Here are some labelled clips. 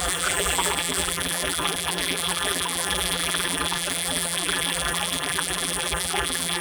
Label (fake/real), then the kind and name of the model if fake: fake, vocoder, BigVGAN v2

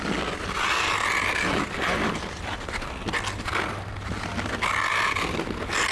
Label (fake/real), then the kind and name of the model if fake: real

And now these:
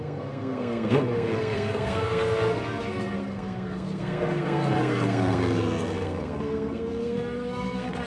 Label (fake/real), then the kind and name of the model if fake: fake, codec, SNAC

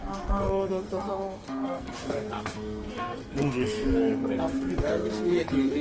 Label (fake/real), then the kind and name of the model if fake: fake, codec, SNAC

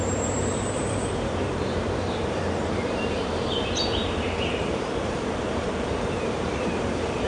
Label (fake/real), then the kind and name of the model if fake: fake, vocoder, BigVGAN v2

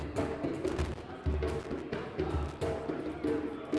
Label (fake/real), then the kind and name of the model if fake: real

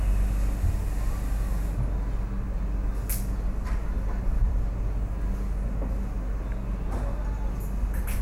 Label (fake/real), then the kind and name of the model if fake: real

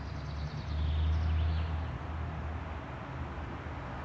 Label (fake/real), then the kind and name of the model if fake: real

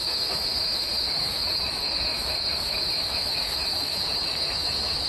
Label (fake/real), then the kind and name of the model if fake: fake, autoencoder, DAC-VAE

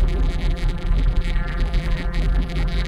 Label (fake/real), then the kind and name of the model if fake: fake, vocoder, BigVGAN v2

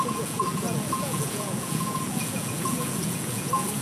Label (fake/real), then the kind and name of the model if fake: fake, vocoder, Vocos